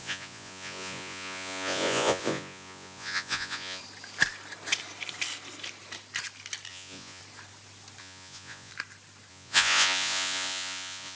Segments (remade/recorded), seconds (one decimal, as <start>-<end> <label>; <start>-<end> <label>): 0.0-3.8 remade; 3.8-6.7 recorded; 6.7-7.2 remade; 7.2-8.0 recorded; 8.0-8.7 remade; 8.7-9.3 recorded; 9.3-11.2 remade